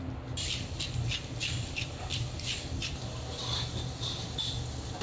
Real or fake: real